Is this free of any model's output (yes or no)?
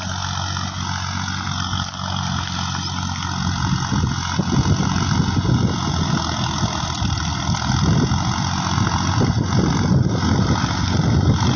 yes